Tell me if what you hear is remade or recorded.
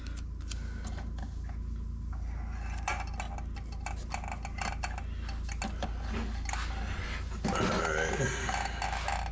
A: recorded